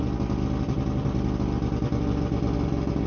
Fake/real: real